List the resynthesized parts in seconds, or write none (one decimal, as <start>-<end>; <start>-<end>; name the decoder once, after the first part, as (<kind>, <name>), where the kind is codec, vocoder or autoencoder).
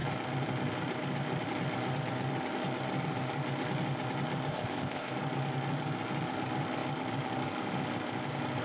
4.5-5.1 (codec, ZipCodec)